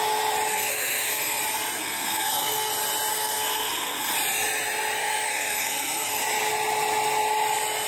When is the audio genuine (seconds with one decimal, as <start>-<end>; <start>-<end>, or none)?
0.0-0.5; 1.4-1.8; 2.7-3.1; 4.1-5.0; 6.2-7.9